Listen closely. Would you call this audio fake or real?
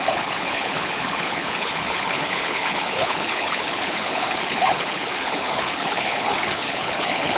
fake